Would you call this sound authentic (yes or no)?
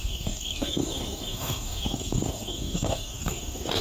no